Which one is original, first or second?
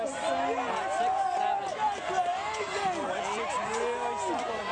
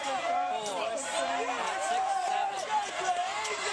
first